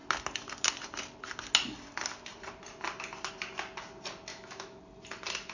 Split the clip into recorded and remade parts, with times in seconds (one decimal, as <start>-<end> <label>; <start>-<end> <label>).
0.0-4.3 recorded; 4.3-4.8 remade; 4.8-5.5 recorded